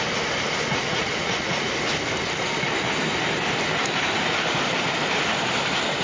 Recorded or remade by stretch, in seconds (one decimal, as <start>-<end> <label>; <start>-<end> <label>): 0.0-0.7 recorded; 0.7-1.7 remade; 1.7-6.0 recorded